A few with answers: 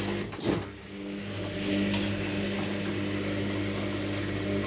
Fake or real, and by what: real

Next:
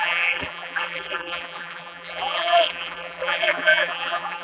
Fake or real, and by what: fake, vocoder, BigVGAN v2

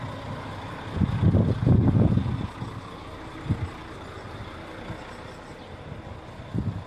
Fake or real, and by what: real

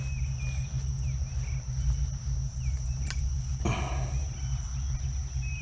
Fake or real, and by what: real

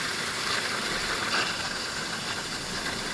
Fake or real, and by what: fake, vocoder, BigVGAN v2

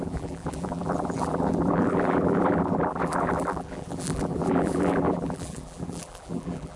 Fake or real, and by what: fake, vocoder, BigVGAN v2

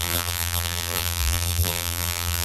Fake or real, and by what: fake, vocoder, BigVGAN v2